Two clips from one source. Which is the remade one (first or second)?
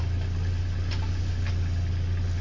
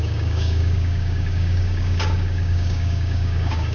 second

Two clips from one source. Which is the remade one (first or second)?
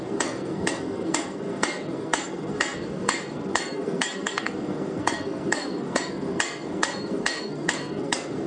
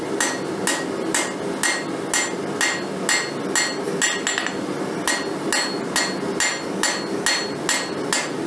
first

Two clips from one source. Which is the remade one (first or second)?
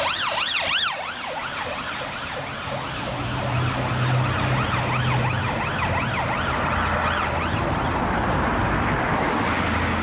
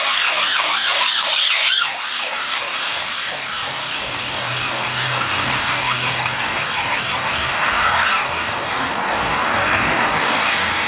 second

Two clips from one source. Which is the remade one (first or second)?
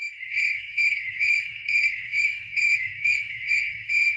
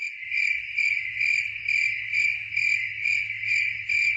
first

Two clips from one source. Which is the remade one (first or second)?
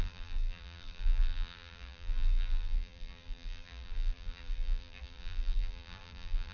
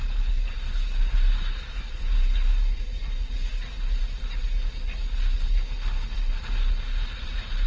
first